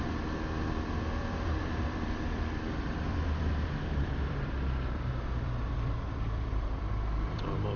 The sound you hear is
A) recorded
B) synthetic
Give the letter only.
B